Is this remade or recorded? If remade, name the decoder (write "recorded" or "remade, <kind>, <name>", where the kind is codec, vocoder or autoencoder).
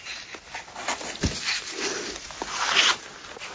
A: recorded